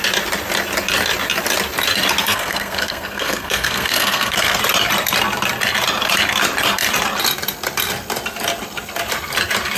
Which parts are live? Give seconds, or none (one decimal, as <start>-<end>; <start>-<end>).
0.0-2.2; 4.6-9.8